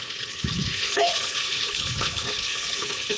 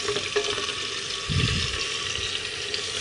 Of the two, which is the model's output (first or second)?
first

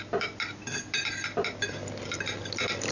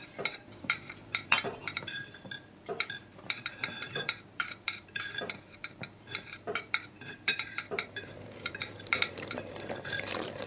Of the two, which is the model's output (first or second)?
second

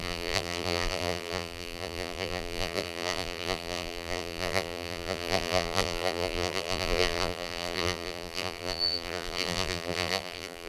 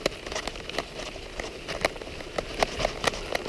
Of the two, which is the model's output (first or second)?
first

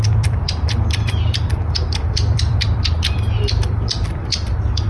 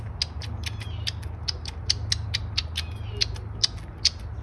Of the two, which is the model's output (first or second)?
first